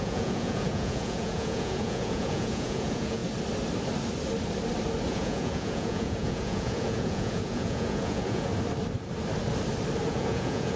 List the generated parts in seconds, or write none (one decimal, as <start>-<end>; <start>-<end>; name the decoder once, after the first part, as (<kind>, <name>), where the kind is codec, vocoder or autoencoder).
0.0-3.2 (vocoder, Vocos); 5.1-8.5; 10.1-10.8

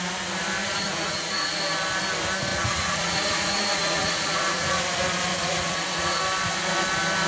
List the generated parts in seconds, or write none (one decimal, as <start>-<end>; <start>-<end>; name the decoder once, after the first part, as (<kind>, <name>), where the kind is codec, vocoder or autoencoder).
0.6-1.6 (vocoder, Vocos); 2.5-4.8; 5.3-6.2

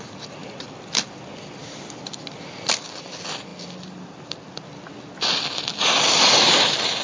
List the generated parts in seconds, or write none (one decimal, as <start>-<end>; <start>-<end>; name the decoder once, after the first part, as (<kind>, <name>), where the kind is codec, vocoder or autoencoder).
none

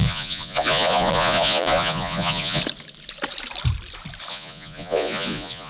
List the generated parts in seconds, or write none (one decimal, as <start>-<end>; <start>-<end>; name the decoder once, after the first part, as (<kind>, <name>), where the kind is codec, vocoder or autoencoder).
0.0-2.6 (vocoder, Vocos); 4.3-5.7

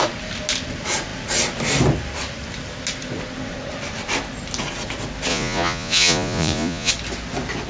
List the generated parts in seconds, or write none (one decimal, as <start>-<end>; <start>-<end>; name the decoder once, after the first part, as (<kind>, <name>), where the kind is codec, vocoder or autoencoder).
5.3-6.9 (vocoder, Vocos)

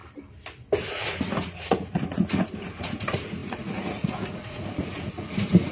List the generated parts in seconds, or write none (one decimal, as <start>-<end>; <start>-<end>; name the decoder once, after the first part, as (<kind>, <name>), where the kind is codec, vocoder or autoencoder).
0.9-5.7 (vocoder, Vocos)

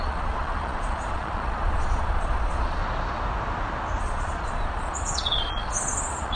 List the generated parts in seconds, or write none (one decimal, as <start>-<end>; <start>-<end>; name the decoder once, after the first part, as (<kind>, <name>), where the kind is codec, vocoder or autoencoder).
0.0-2.8 (vocoder, Vocos); 4.0-6.4